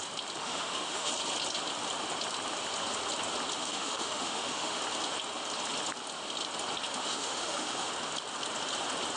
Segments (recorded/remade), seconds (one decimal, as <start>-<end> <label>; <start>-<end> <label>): 0.0-0.4 recorded; 0.4-1.1 remade; 1.1-3.6 recorded; 3.6-4.8 remade; 4.8-6.9 recorded; 6.9-7.9 remade; 7.9-9.2 recorded